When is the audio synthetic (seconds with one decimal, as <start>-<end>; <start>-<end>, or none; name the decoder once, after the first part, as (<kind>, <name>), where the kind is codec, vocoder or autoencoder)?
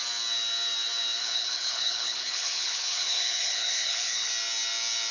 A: 1.2-4.3 (codec, HILCodec)